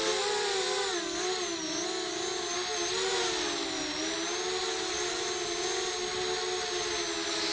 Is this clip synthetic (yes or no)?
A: no